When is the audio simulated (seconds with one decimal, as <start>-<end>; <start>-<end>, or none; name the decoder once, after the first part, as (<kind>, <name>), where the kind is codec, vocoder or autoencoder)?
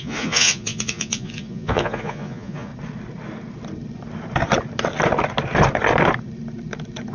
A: 0.0-2.7 (vocoder, Vocos)